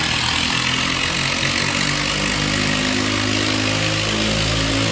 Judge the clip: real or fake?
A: real